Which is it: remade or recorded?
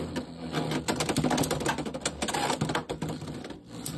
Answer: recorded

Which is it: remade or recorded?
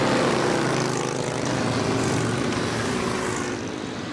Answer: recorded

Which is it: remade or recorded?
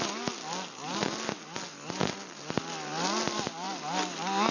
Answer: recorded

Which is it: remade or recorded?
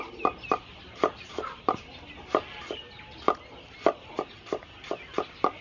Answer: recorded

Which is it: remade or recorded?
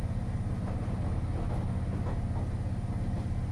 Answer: recorded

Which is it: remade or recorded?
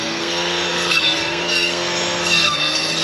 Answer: remade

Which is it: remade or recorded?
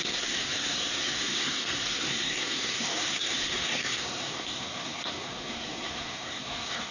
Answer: remade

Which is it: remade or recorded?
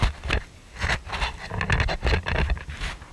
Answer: recorded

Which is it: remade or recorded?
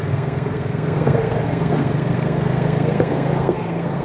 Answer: remade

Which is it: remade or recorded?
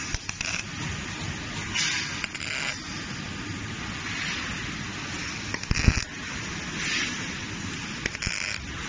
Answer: recorded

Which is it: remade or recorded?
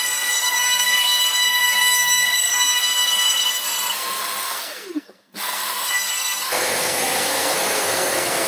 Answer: remade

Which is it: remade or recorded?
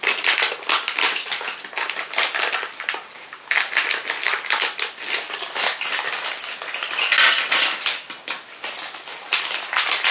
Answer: recorded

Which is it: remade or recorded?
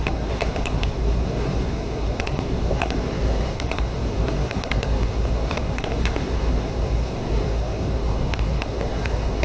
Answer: remade